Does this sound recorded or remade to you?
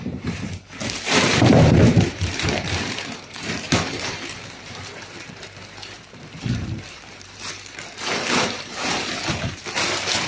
remade